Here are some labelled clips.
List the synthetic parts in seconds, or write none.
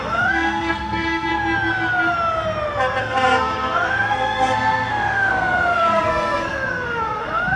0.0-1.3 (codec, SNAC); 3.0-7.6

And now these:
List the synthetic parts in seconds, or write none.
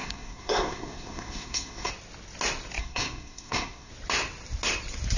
0.0-1.9 (codec, SNAC); 2.8-3.9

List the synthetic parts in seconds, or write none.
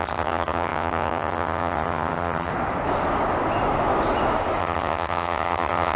0.0-2.5 (vocoder, HiFi-GAN); 4.6-6.0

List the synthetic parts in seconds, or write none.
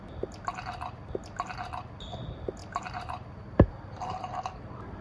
2.6-4.4 (vocoder, BigVGAN v2)